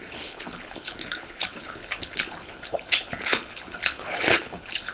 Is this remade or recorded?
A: remade